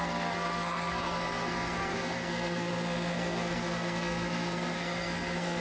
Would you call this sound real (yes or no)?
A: no